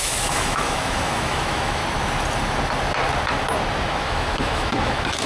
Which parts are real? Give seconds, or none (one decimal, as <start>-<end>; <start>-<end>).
1.8-3.7